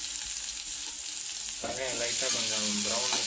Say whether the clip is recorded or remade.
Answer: recorded